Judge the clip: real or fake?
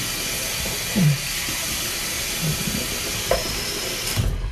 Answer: real